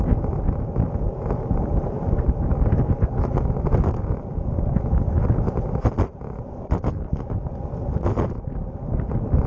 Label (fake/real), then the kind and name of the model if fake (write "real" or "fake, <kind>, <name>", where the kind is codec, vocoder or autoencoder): real